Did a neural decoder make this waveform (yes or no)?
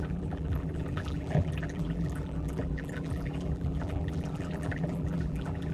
yes